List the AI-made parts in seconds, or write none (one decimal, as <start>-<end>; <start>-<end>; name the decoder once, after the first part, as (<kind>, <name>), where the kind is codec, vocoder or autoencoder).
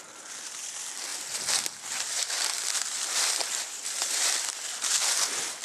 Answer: 1.1-4.5 (vocoder, BigVGAN v2)